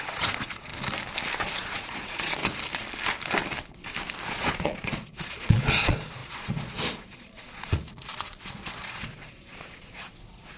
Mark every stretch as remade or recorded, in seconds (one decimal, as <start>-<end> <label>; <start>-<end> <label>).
0.0-0.7 remade; 0.7-1.4 recorded; 1.4-2.4 remade; 2.4-4.3 recorded; 4.3-10.6 remade